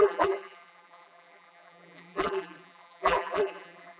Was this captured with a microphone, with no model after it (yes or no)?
no